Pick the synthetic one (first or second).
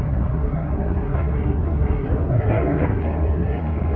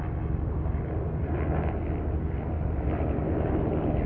first